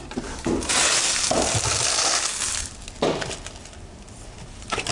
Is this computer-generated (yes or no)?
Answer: no